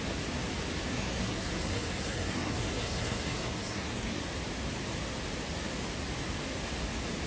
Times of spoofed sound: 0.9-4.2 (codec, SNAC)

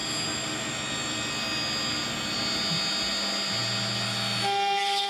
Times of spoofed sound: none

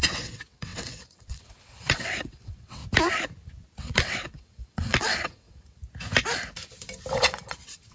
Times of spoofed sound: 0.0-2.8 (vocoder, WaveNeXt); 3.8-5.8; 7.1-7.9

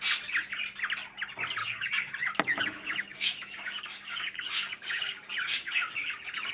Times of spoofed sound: 1.6-2.1 (codec, DAC); 2.5-6.5

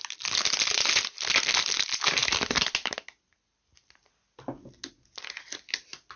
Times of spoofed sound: none

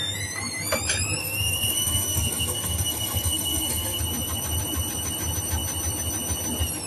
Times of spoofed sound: 1.2-4.0 (codec, SNAC)

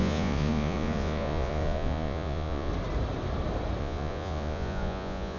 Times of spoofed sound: 0.0-2.7 (vocoder, Vocos); 3.8-5.4